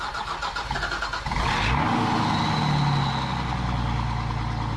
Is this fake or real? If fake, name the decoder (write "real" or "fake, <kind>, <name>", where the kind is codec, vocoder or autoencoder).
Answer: real